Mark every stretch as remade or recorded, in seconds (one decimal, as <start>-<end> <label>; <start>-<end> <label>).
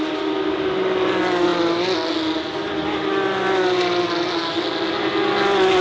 0.0-5.8 recorded